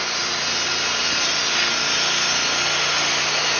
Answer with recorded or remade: recorded